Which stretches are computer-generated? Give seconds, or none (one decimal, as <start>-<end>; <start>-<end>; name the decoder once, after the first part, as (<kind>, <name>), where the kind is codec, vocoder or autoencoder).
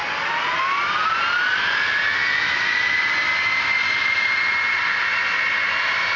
none